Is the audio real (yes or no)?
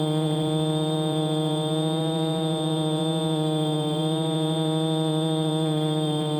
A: no